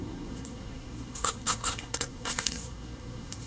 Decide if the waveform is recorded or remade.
remade